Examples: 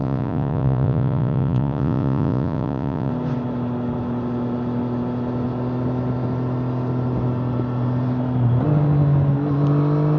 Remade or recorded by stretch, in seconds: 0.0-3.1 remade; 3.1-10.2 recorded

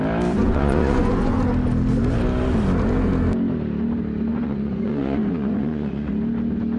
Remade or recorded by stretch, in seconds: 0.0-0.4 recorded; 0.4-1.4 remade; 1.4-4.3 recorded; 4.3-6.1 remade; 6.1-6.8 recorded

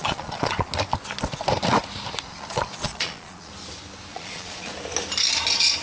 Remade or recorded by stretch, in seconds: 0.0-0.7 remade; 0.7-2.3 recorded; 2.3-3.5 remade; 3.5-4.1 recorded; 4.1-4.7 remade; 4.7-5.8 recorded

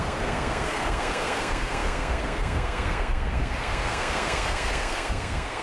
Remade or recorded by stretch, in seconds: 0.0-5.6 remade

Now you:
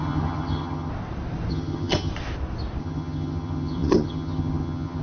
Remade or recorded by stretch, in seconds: 0.0-0.9 remade; 0.9-1.5 recorded; 1.5-2.1 remade; 2.1-2.8 recorded; 2.8-5.0 remade